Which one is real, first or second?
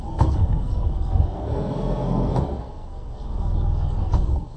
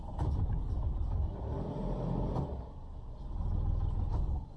second